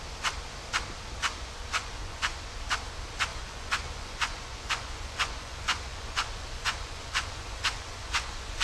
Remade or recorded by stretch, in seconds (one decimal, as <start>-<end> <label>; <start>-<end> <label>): 0.0-1.3 recorded; 1.3-2.6 remade; 2.6-3.3 recorded; 3.3-8.6 remade